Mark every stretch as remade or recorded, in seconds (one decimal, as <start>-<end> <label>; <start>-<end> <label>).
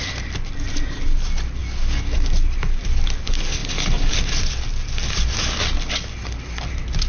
0.0-7.1 recorded